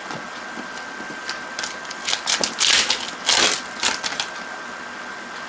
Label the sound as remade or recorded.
recorded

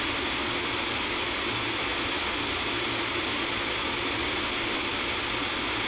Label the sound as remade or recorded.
recorded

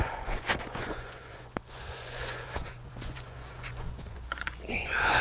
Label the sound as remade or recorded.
remade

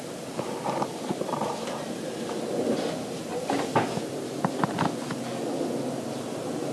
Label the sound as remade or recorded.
recorded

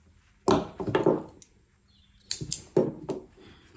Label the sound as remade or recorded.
recorded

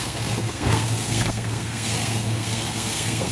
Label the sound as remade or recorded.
remade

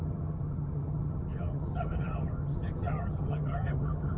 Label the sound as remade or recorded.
remade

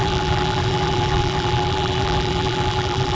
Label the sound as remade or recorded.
remade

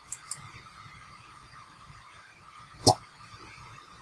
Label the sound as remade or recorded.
recorded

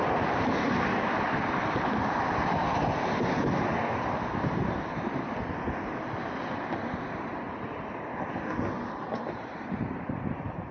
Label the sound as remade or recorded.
recorded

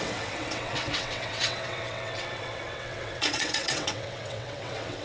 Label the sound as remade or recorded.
remade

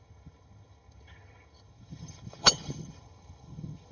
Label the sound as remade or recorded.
remade